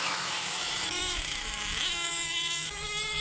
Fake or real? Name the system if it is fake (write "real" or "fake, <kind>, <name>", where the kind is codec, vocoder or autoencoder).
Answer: fake, autoencoder, DAC-VAE